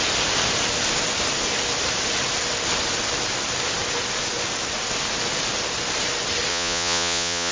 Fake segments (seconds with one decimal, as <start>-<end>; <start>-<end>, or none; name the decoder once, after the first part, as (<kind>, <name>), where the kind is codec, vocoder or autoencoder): 6.5-7.5 (vocoder, Vocos)